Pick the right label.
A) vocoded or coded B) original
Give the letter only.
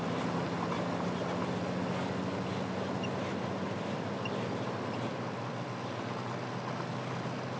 B